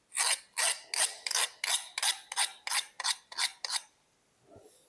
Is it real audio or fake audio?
real